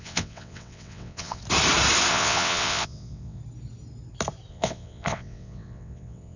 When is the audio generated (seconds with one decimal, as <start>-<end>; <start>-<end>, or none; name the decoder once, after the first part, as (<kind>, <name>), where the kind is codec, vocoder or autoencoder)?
0.0-1.4 (vocoder, WaveNeXt); 2.1-3.4; 4.5-6.4